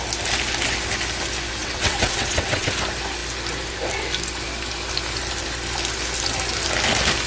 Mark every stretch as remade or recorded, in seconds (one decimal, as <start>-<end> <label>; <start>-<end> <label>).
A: 0.0-1.6 recorded; 1.6-2.7 remade; 2.7-7.3 recorded